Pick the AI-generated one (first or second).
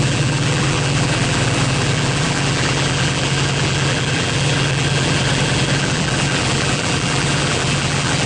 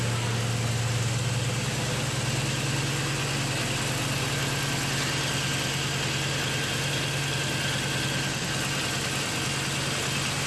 first